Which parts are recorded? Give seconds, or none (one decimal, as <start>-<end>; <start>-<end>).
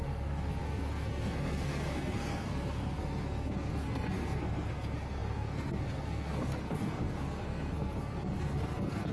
none